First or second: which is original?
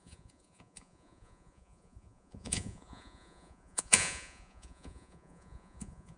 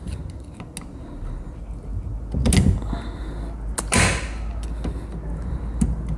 second